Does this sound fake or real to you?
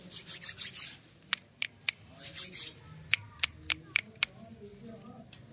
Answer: real